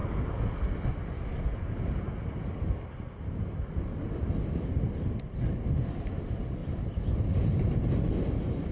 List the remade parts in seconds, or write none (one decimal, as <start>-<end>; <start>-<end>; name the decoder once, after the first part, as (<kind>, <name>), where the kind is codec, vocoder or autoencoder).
none